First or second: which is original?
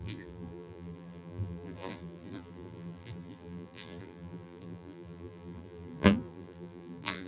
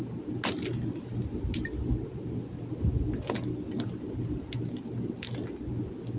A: second